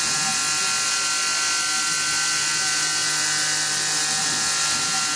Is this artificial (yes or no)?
no